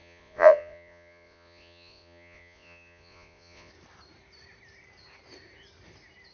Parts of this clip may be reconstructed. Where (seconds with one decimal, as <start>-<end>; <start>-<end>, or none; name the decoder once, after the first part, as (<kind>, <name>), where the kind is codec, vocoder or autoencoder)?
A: 0.0-3.7 (vocoder, Vocos)